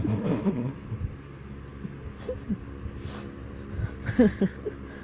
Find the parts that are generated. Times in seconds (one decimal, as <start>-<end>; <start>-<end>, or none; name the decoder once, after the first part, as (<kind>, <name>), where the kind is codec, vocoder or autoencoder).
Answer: none